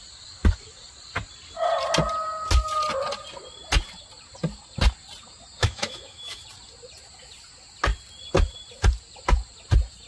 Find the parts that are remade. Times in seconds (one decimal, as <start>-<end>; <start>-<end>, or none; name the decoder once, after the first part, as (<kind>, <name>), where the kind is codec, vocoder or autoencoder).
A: 5.6-6.4 (autoencoder, DAC-VAE)